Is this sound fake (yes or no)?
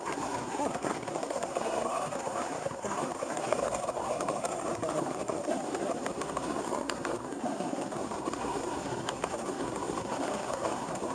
yes